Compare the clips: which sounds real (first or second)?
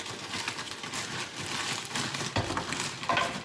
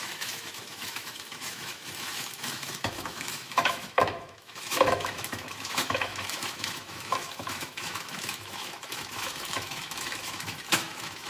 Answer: first